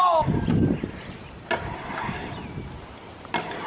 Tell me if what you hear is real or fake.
real